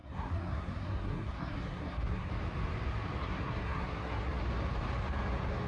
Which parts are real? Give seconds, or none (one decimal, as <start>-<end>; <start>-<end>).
2.3-3.2; 4.4-5.7